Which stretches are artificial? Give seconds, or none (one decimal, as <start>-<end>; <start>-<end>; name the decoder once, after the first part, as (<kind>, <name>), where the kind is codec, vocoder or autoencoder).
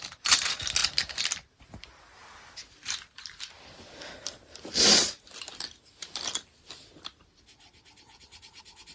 none